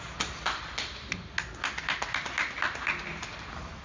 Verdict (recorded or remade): recorded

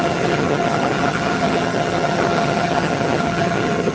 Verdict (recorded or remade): remade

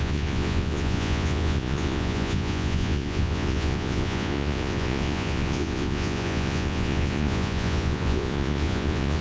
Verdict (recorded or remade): remade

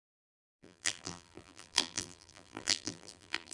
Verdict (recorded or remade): remade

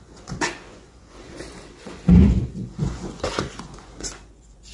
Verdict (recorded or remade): remade